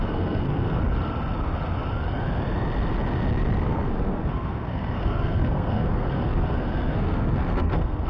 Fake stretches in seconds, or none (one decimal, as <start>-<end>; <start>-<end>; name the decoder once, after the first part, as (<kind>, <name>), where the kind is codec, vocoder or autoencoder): 0.0-0.8 (codec, SNAC); 3.6-8.1